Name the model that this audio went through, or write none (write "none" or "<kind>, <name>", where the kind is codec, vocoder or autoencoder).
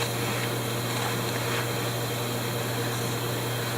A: none